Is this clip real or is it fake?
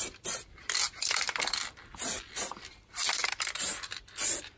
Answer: real